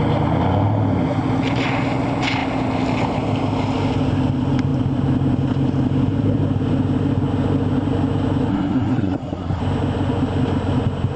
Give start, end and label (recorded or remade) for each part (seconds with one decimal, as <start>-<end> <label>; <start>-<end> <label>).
0.0-8.5 recorded; 8.5-9.6 remade; 9.6-11.2 recorded